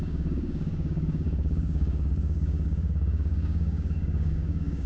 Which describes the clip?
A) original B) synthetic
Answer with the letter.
B